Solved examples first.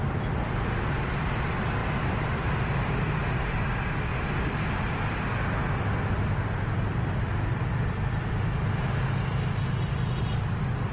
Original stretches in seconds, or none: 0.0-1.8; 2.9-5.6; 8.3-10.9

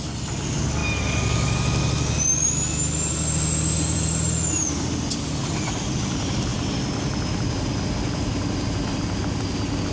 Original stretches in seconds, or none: 0.0-5.4; 6.0-9.9

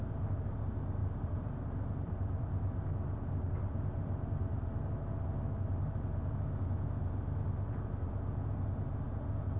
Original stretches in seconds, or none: 0.0-1.0; 4.9-9.6

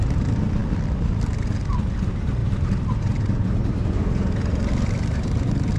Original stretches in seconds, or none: 0.0-2.4; 4.0-5.8